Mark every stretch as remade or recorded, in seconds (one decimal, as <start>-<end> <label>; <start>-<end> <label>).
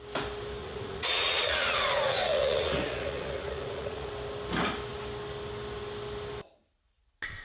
0.0-0.6 recorded; 0.6-4.1 remade; 4.1-7.4 recorded